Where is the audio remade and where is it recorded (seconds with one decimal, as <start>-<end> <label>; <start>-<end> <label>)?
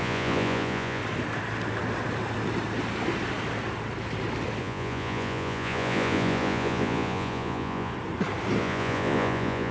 0.0-1.0 remade; 1.0-4.6 recorded; 4.6-7.9 remade; 7.9-8.6 recorded; 8.6-9.7 remade